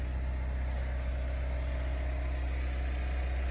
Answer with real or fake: real